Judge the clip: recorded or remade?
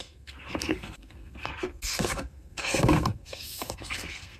remade